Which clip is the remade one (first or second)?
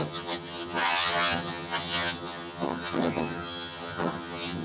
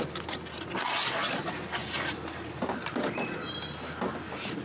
first